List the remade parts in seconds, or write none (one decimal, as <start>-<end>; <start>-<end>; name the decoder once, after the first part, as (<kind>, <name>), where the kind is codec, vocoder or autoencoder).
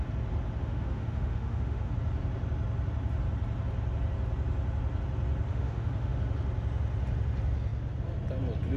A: 0.6-1.9 (autoencoder, DAC-VAE); 5.5-6.2